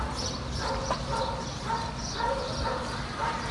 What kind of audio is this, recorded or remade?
recorded